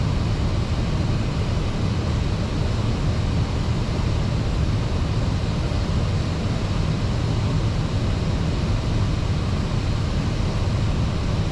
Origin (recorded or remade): recorded